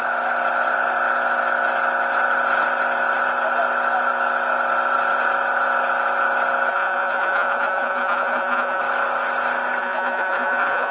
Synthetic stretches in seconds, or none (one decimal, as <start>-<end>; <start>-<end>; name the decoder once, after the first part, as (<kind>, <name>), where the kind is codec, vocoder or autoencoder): 6.7-8.8 (vocoder, Vocos); 9.8-10.9